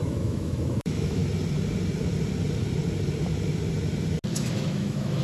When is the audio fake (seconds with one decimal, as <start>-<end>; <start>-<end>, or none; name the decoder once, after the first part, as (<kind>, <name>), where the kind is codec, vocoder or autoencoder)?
0.0-1.2 (autoencoder, DAC-VAE); 4.3-5.2